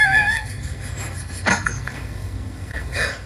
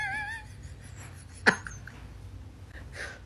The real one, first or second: second